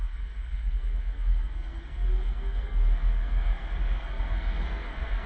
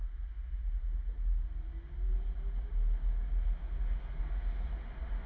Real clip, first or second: second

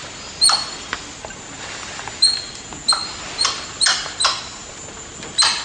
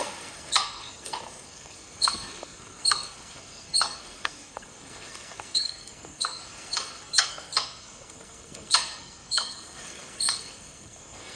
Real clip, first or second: first